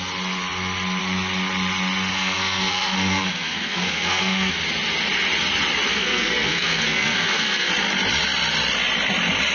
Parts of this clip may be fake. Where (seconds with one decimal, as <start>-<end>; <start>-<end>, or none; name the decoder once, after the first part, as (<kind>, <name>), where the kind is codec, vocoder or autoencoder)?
2.1-4.5 (codec, SNAC); 5.9-7.7